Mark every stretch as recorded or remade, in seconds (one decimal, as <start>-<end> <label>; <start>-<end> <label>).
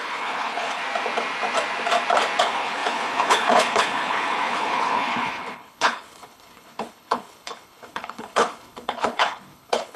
0.0-0.8 remade; 0.8-2.4 recorded; 2.4-10.0 remade